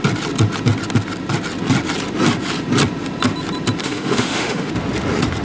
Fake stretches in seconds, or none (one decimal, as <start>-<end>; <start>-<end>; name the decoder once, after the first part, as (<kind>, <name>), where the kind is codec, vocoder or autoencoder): 3.8-4.7 (autoencoder, DAC-VAE)